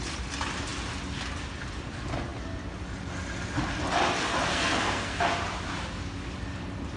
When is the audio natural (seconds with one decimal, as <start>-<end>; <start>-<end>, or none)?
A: 0.0-4.5; 5.2-7.0